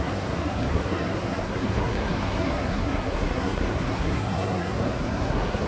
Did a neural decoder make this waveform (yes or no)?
yes